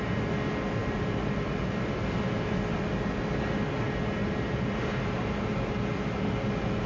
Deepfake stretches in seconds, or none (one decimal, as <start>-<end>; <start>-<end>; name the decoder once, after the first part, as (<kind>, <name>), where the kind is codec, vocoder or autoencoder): 0.8-2.2 (vocoder, BigVGAN v2); 4.2-5.7